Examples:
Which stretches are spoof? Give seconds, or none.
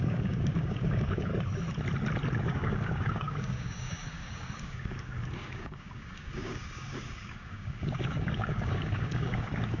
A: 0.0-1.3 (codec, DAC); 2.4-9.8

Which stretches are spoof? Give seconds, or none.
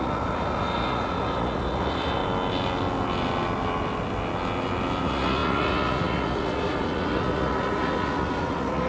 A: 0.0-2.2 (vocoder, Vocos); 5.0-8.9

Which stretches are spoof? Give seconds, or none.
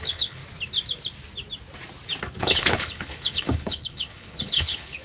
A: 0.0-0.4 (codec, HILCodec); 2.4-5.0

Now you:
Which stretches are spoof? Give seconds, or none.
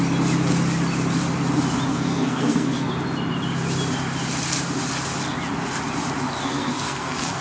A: 1.9-2.9 (codec, SNAC); 6.4-7.4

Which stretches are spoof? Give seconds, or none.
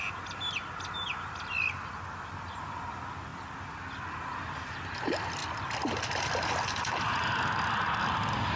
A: none